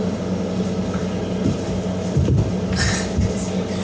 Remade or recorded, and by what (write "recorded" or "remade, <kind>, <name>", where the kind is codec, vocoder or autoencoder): recorded